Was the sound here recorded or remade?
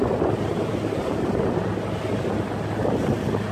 recorded